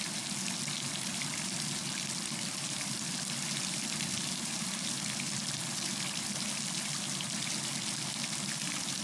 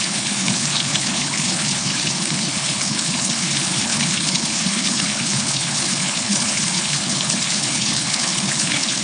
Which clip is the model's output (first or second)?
second